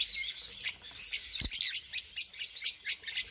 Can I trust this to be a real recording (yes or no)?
yes